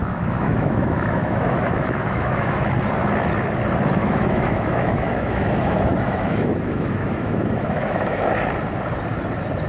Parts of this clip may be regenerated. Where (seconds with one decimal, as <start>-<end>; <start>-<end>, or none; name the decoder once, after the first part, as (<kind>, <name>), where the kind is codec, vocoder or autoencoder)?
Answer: 0.0-2.7 (autoencoder, DAC-VAE); 4.0-8.2